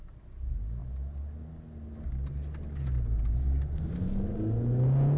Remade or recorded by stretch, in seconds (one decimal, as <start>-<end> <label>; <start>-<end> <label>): 0.0-5.2 recorded

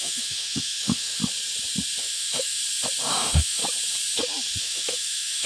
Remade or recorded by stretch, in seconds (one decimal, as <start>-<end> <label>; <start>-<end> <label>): 0.0-1.2 remade; 1.2-2.0 recorded; 2.0-2.6 remade; 2.6-3.1 recorded; 3.1-3.6 remade; 3.6-4.6 recorded; 4.6-5.5 remade

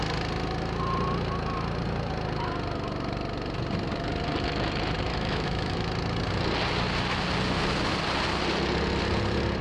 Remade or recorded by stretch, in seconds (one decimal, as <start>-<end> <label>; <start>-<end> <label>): 0.0-5.1 recorded; 5.1-5.9 remade; 5.9-9.6 recorded

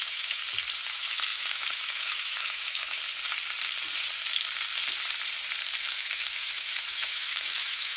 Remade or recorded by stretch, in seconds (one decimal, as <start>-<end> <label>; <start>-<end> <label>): 0.0-0.4 remade; 0.4-0.9 recorded; 0.9-3.0 remade; 3.0-5.8 recorded; 5.8-8.0 remade